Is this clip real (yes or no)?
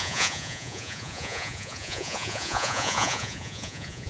no